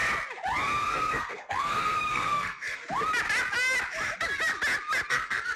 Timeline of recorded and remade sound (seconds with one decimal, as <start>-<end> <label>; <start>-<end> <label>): 0.0-0.8 recorded; 0.8-2.8 remade; 2.8-5.1 recorded; 5.1-5.6 remade